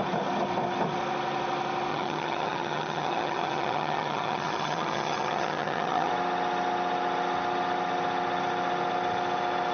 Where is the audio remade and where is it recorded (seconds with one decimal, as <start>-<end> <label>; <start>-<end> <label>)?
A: 0.0-1.9 recorded; 1.9-6.1 remade; 6.1-9.7 recorded